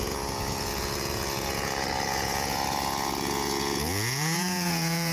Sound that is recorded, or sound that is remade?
remade